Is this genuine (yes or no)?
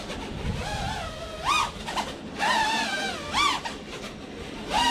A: yes